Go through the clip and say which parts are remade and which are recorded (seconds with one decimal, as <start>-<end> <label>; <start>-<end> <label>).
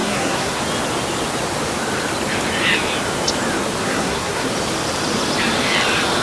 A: 0.0-0.6 remade; 0.6-3.8 recorded; 3.8-4.5 remade; 4.5-6.2 recorded